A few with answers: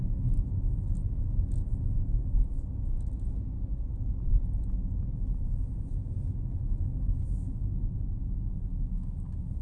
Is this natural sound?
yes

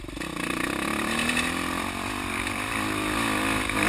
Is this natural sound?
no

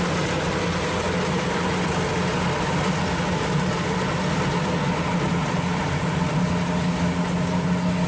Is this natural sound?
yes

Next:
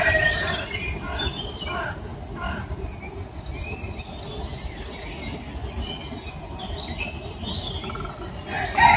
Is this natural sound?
no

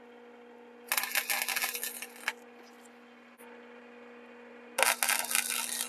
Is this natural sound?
yes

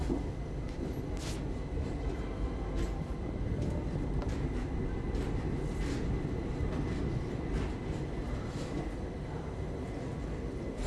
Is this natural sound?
yes